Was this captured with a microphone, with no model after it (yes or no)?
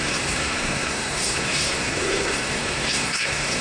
no